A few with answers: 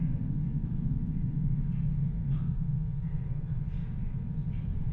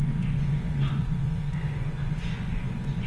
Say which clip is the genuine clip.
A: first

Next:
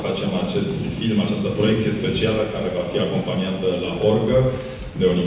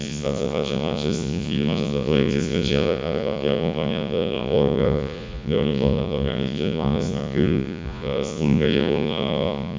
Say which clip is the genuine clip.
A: first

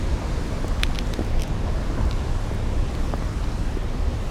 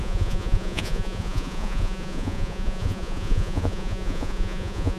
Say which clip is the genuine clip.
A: first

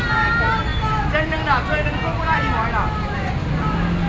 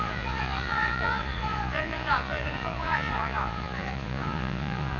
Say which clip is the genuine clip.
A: first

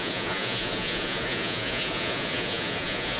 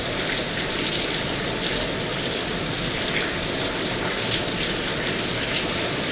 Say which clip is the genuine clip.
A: second